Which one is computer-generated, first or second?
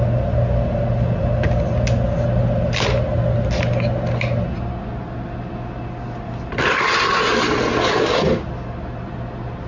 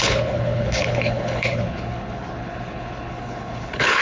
second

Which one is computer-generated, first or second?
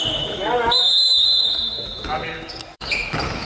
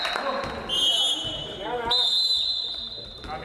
first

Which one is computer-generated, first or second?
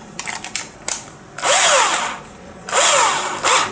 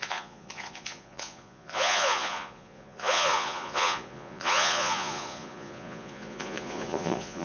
second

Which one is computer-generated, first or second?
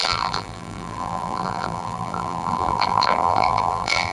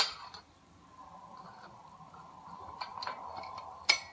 first